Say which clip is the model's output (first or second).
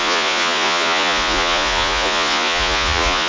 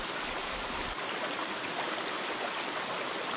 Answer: first